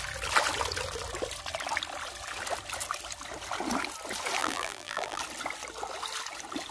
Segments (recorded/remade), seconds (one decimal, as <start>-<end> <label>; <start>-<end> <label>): 0.0-4.4 recorded; 4.4-5.2 remade; 5.2-6.7 recorded